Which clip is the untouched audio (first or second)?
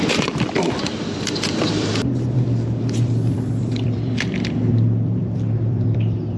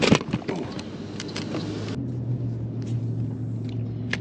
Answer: second